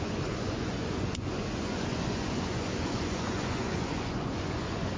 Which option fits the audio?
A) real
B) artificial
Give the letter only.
B